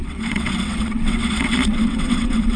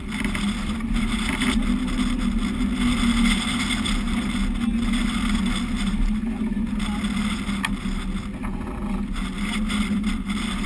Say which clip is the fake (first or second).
first